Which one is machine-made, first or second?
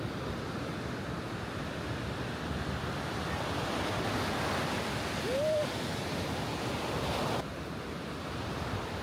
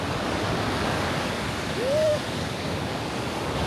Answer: second